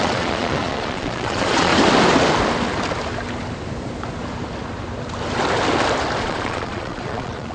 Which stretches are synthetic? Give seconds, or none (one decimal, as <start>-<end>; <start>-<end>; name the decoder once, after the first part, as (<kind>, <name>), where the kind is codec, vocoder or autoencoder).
0.0-1.7 (vocoder, Vocos); 6.2-7.5